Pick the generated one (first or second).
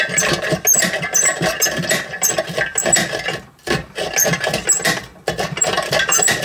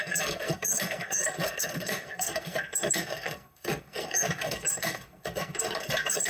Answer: second